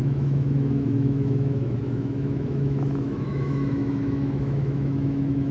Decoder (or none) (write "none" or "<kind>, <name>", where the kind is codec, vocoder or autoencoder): autoencoder, DAC-VAE